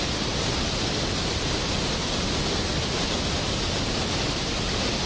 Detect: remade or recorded recorded